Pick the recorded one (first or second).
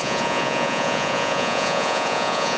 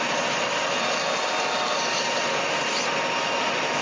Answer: second